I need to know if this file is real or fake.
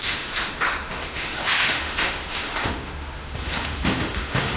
fake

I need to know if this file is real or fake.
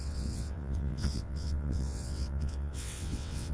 fake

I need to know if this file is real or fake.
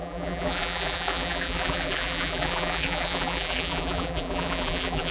fake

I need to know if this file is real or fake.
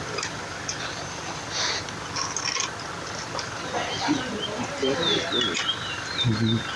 real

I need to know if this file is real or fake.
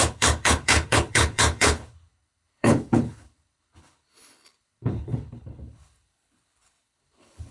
fake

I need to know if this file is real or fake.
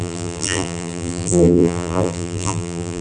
fake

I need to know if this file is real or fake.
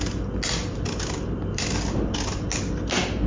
real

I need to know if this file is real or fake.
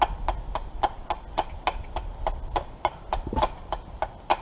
real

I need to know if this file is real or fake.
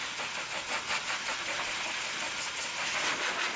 real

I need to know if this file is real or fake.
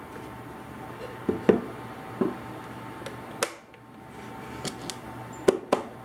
real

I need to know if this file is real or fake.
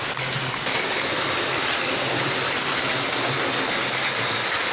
real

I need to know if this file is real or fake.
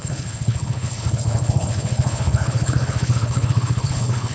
fake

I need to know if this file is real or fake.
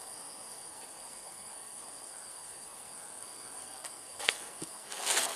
fake